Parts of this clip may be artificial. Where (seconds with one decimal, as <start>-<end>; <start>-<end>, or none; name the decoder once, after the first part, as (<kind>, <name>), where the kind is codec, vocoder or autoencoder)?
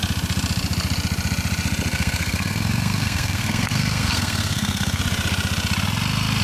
1.9-5.0 (codec, SNAC)